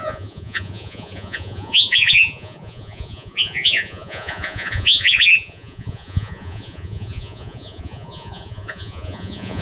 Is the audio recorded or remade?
remade